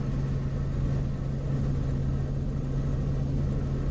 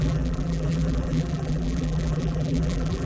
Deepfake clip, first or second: second